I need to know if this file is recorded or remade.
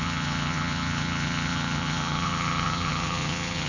remade